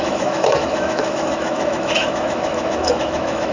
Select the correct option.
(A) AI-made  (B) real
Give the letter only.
A